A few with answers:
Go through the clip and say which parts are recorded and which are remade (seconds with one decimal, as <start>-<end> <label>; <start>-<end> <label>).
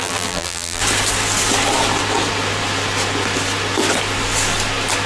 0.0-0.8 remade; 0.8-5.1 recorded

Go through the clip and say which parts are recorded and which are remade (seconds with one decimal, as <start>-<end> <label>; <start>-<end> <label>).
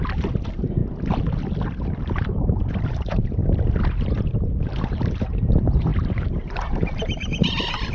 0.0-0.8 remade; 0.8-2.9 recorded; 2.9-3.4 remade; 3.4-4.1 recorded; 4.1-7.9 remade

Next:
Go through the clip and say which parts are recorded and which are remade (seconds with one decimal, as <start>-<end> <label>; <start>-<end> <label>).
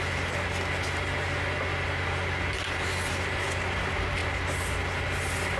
0.0-5.6 recorded